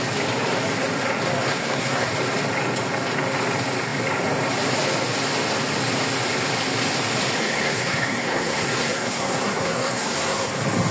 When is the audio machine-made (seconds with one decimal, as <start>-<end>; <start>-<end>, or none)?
1.5-2.1; 7.4-10.5